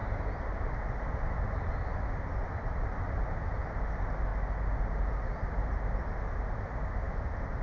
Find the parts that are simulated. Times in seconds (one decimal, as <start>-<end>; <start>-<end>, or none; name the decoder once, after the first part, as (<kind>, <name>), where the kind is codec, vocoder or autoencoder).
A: 0.0-1.9 (vocoder, BigVGAN v2); 2.4-3.7; 4.3-5.1